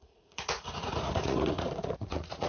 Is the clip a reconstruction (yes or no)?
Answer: yes